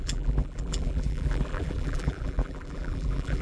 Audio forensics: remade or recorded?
remade